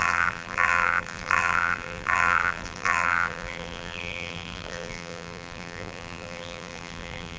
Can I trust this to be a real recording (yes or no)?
no